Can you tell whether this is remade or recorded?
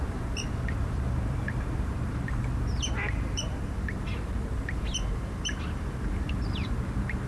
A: remade